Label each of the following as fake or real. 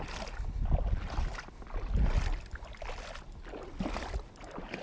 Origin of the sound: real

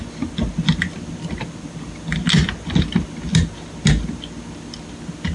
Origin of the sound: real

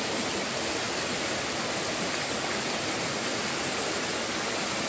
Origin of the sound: real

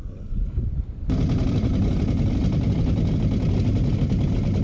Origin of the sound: real